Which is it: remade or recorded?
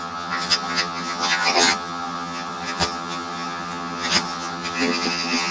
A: remade